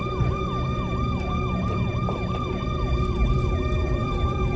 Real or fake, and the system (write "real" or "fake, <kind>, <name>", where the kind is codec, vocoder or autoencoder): fake, vocoder, BigVGAN v2